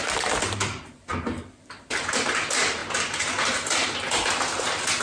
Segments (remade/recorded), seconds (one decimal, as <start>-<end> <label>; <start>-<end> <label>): 0.0-5.0 recorded